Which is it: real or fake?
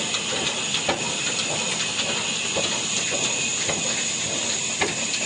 real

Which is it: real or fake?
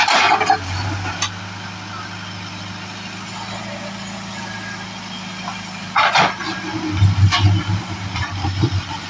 real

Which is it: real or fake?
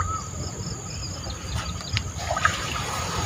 real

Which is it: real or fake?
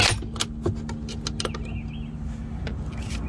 real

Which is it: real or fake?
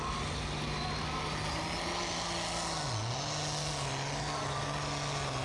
real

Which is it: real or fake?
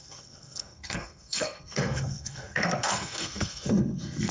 fake